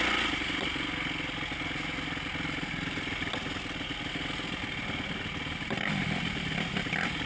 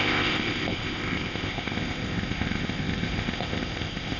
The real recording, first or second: first